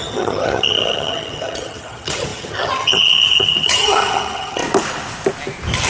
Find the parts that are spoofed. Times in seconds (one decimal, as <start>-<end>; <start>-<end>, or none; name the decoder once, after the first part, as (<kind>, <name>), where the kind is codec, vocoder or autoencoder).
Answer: 0.0-4.6 (vocoder, HiFi-GAN)